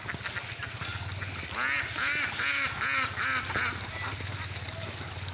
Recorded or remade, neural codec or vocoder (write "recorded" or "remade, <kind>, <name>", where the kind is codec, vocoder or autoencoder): recorded